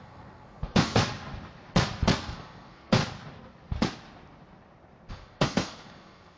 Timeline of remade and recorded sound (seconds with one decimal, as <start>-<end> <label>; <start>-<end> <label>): 0.0-1.0 remade; 1.0-2.2 recorded; 2.2-3.0 remade; 3.0-5.1 recorded; 5.1-6.4 remade